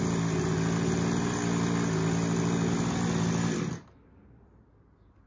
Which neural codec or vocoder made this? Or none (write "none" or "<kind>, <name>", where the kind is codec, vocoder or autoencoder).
none